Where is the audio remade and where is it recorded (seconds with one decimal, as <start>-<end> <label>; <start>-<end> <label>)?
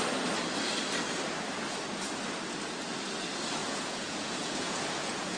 0.0-3.6 recorded; 3.6-5.4 remade